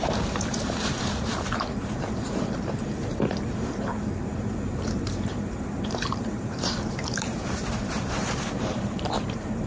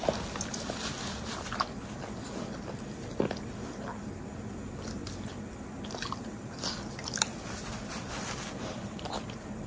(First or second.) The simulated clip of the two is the first